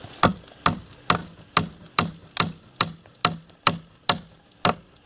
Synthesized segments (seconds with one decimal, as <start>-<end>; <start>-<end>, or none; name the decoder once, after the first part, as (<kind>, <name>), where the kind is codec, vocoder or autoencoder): none